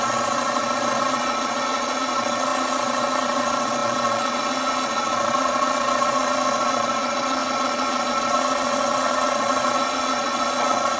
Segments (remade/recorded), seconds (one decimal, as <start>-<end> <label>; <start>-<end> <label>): 0.0-11.0 remade